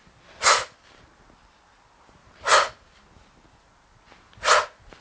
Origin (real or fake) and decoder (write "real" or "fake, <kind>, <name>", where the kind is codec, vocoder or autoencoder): real